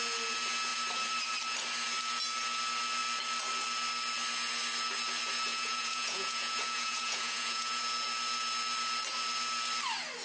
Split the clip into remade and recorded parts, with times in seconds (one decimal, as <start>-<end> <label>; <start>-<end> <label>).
0.0-5.5 recorded; 5.5-7.8 remade; 7.8-10.2 recorded

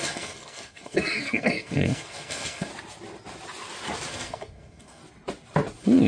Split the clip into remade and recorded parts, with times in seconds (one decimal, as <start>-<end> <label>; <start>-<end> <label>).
0.0-2.7 remade; 2.7-4.1 recorded; 4.1-5.0 remade; 5.0-6.1 recorded

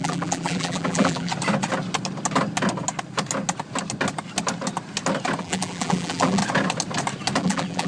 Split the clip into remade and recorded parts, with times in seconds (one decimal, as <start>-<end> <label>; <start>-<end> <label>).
0.0-1.3 remade; 1.3-5.4 recorded; 5.4-6.4 remade; 6.4-7.4 recorded; 7.4-7.9 remade

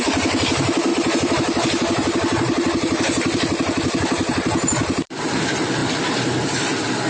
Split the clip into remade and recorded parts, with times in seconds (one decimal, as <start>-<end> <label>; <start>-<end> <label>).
0.0-7.1 remade

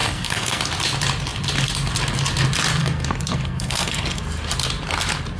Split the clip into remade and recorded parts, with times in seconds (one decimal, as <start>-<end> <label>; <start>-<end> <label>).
0.0-0.6 remade; 0.6-2.8 recorded; 2.8-4.2 remade; 4.2-5.4 recorded

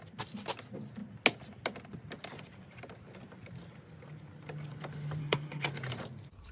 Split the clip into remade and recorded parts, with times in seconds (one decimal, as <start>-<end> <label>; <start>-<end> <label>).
0.0-5.2 recorded; 5.2-5.7 remade; 5.7-6.5 recorded